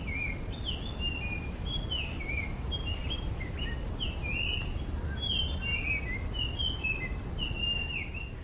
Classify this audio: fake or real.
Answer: real